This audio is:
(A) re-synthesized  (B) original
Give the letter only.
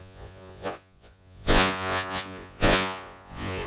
A